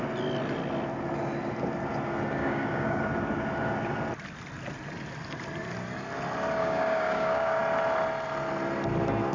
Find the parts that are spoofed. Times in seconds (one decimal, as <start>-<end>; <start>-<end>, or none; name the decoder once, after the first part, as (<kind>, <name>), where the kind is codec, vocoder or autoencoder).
2.4-3.0 (codec, DAC); 6.6-7.6